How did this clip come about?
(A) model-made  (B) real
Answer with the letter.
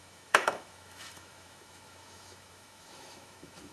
A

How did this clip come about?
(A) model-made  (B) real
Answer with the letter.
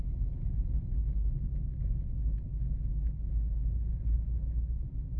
B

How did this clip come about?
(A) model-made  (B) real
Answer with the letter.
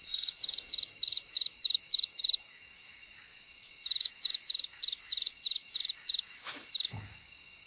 A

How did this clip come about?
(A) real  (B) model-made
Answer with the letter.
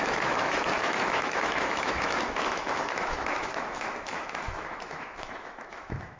B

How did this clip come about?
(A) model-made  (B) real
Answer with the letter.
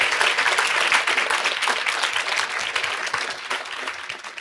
B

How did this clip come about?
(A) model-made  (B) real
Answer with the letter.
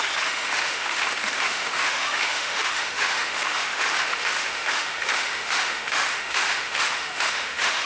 A